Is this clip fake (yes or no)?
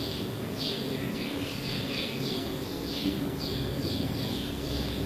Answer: yes